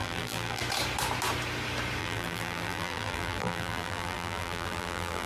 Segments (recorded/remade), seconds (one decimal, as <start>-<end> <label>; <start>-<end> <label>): 0.0-0.6 remade; 0.6-2.0 recorded; 2.0-5.3 remade